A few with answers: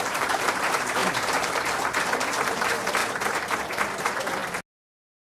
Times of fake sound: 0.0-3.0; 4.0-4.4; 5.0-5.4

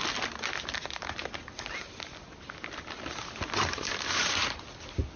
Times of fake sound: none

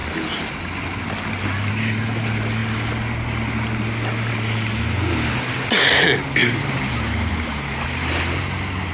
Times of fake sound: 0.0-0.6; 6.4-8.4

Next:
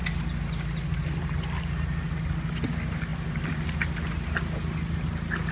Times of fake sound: none

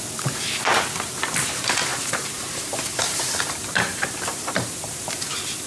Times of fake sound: 1.9-5.3

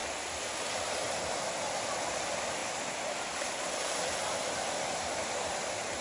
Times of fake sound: none

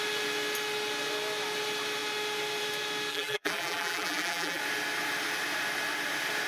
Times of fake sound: 3.1-4.6

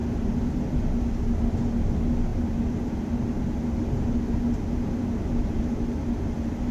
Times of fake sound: none